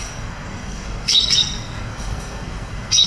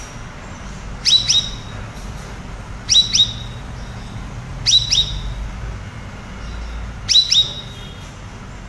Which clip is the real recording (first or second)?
second